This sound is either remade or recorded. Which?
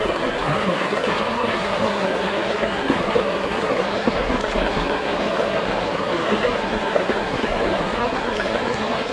remade